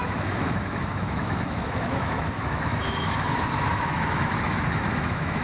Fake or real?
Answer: fake